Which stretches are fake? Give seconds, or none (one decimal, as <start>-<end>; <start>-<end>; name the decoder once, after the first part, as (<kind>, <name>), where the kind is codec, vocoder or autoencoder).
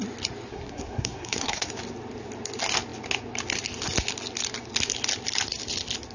0.5-1.7 (codec, SNAC)